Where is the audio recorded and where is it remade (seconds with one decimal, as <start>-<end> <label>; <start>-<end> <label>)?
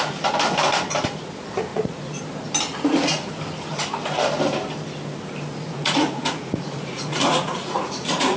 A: 0.0-1.7 recorded; 1.7-2.2 remade; 2.2-2.7 recorded; 2.7-3.3 remade; 3.3-5.5 recorded; 5.5-8.4 remade